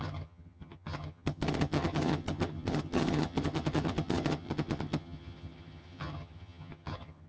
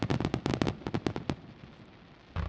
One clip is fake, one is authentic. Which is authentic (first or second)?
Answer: second